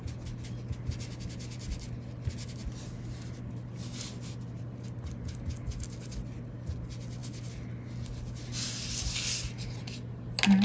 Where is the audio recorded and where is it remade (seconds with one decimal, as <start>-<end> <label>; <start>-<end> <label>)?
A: 0.0-10.6 recorded